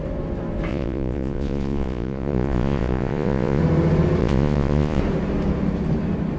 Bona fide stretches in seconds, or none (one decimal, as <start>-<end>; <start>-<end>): 0.0-0.7; 3.6-4.2; 5.0-6.4